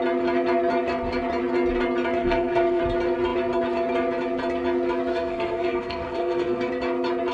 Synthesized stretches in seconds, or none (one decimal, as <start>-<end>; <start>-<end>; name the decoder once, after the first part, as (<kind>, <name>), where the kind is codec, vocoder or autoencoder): 2.2-2.8 (codec, SNAC); 5.1-6.7